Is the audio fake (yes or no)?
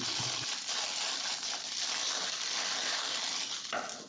no